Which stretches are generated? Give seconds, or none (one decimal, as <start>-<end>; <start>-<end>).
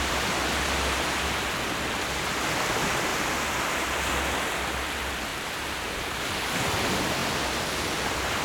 3.1-4.1; 5.3-6.2